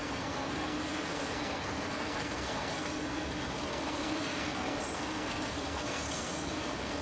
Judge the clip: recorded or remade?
remade